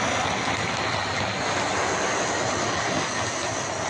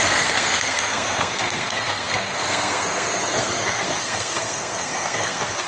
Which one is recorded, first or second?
first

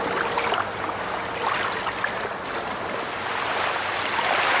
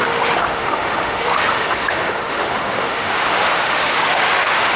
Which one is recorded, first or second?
first